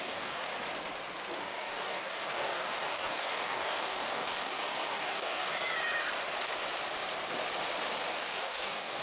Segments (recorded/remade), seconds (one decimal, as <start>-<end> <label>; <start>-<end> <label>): 0.0-0.5 remade; 0.5-1.4 recorded; 1.4-5.5 remade; 5.5-8.1 recorded; 8.1-9.0 remade